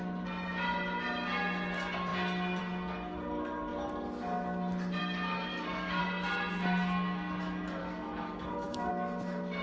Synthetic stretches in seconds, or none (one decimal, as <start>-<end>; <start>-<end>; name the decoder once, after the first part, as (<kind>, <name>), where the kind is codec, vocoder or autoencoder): 5.5-6.0 (codec, DAC); 7.8-8.9